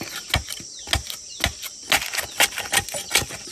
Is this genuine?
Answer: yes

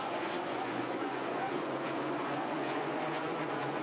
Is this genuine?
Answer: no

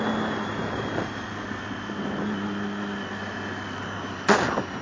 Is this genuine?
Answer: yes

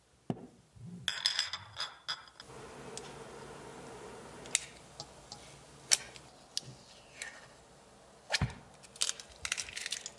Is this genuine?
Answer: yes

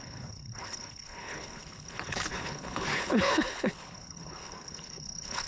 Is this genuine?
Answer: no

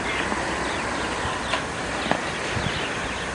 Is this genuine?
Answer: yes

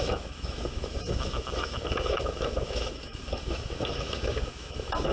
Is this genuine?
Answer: no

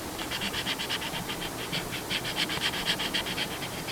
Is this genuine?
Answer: no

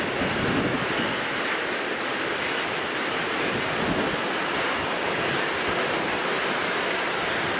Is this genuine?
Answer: yes